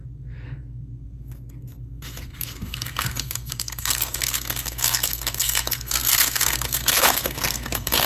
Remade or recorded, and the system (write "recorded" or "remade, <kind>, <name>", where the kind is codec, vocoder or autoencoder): remade, codec, SNAC